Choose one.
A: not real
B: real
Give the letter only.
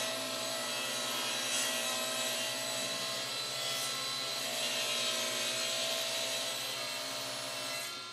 B